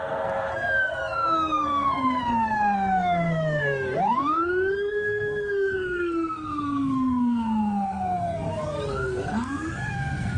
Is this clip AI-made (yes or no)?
yes